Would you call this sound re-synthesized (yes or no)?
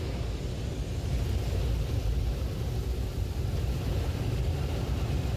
no